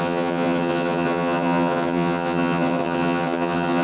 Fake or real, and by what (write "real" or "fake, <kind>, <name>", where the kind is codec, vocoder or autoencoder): fake, vocoder, HiFi-GAN